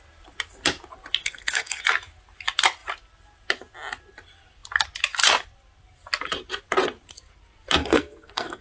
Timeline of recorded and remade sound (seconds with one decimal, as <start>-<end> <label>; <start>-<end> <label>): 0.0-1.2 recorded; 1.2-1.8 remade; 1.8-7.8 recorded; 7.8-8.6 remade